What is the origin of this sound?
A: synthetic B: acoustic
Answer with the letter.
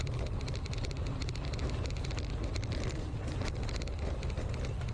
B